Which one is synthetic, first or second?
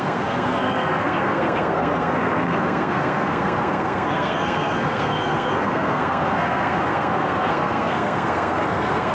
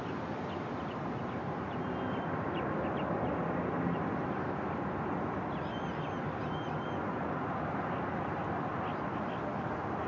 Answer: first